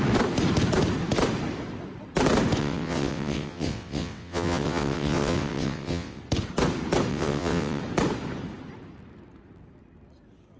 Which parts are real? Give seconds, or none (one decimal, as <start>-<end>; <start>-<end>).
0.0-2.6; 6.2-7.1; 7.8-10.6